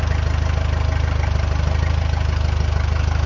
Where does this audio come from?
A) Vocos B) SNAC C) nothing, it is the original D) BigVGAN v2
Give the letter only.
C